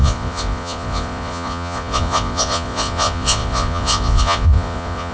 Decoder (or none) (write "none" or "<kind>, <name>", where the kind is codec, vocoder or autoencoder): vocoder, Vocos